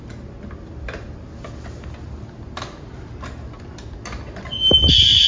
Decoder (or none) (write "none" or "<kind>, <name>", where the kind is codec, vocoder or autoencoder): none